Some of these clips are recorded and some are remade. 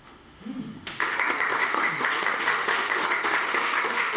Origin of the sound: remade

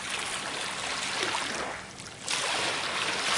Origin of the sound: recorded